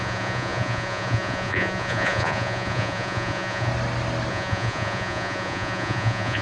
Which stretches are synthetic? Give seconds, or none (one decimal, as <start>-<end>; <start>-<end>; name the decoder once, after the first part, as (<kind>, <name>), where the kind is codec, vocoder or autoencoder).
0.0-3.7 (vocoder, Vocos); 4.3-6.4